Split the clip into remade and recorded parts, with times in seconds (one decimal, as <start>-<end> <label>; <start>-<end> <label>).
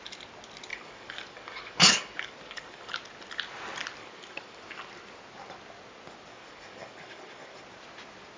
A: 0.0-0.7 recorded; 0.7-2.9 remade; 2.9-4.0 recorded; 4.0-4.6 remade; 4.6-6.3 recorded; 6.3-7.6 remade; 7.6-8.4 recorded